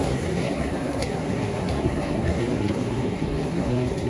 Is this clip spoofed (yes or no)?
yes